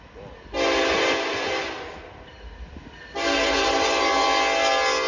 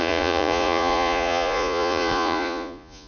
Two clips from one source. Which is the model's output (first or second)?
second